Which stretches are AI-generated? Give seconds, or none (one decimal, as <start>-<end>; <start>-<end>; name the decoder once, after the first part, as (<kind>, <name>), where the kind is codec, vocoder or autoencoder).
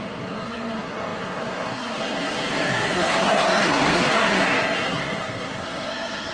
0.0-6.3 (codec, SNAC)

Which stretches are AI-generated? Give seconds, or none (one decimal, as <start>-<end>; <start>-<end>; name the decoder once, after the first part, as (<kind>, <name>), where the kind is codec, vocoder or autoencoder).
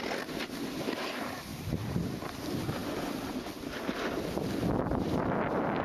1.5-2.1 (vocoder, BigVGAN v2)